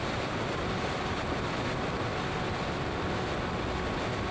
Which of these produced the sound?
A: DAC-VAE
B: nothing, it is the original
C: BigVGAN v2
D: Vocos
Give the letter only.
B